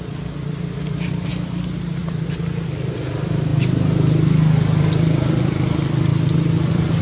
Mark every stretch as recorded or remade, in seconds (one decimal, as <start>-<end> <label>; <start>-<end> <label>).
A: 0.0-1.3 remade; 1.3-2.0 recorded; 2.0-3.5 remade; 3.5-4.8 recorded; 4.8-6.1 remade; 6.1-6.6 recorded; 6.6-7.0 remade